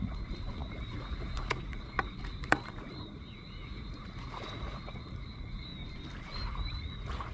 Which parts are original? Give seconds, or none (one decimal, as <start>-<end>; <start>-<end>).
5.7-6.2